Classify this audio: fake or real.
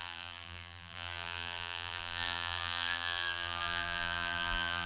fake